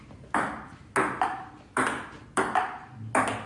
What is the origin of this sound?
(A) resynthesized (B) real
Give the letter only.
B